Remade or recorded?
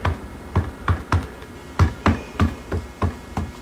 recorded